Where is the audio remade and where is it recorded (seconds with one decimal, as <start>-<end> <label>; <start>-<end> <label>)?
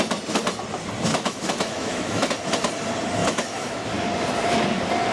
0.0-1.1 recorded; 1.1-2.3 remade; 2.3-3.2 recorded; 3.2-3.9 remade; 3.9-5.1 recorded